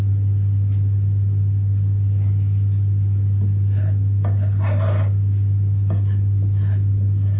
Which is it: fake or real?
real